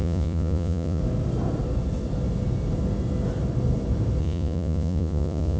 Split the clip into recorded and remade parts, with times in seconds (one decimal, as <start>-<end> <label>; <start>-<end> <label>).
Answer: 0.0-1.0 remade; 1.0-4.2 recorded; 4.2-5.6 remade